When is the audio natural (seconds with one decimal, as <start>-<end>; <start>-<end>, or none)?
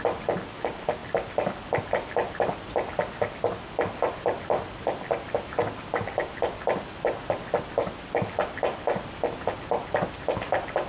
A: 0.0-10.9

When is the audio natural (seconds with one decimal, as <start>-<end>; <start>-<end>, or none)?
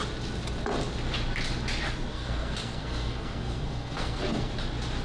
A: 0.0-2.1; 4.5-5.0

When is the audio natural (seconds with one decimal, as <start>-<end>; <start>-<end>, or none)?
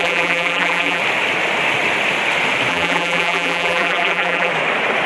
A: 1.0-2.7; 4.5-5.1